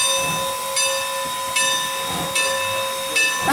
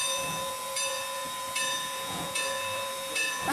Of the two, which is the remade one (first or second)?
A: second